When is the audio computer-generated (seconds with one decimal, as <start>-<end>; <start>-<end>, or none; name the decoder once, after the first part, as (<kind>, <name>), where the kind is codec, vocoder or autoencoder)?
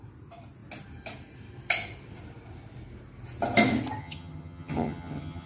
4.0-5.5 (vocoder, HiFi-GAN)